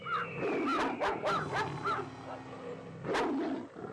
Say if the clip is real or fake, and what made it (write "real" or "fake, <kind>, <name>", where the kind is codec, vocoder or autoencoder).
real